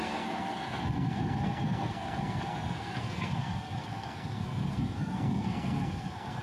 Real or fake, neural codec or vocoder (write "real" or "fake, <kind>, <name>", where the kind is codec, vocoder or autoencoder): fake, codec, SNAC